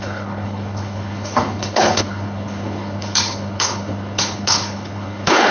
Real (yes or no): no